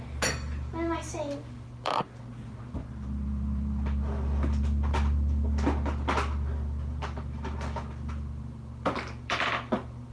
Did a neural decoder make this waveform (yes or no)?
no